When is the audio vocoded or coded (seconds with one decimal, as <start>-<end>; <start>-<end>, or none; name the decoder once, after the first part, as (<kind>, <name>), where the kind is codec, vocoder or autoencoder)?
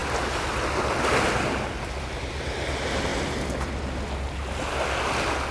none